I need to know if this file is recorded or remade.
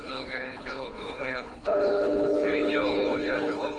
remade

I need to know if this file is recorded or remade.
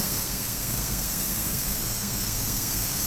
remade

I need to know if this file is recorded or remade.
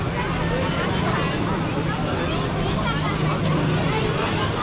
recorded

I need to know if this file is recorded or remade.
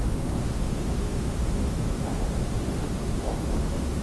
remade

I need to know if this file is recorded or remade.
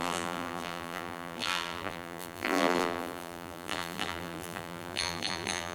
remade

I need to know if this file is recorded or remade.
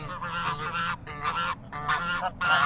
recorded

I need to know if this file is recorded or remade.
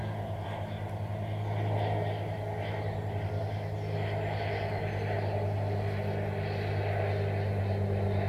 recorded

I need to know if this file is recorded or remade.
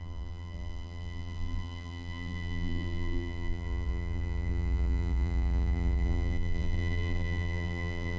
remade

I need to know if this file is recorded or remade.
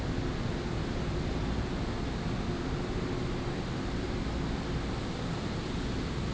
recorded